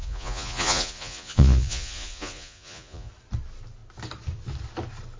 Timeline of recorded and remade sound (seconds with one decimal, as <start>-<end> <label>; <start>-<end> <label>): 0.0-3.1 remade; 3.1-5.2 recorded